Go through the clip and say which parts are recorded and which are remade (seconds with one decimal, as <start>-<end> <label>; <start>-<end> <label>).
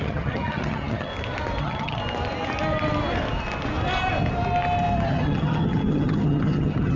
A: 0.0-1.1 remade; 1.1-1.6 recorded; 1.6-2.0 remade; 2.0-5.1 recorded; 5.1-7.0 remade